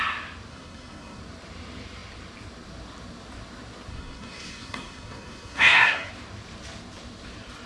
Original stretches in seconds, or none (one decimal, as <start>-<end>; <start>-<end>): 0.0-0.5; 1.2-3.9; 6.1-7.7